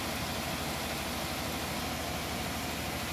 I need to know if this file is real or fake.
real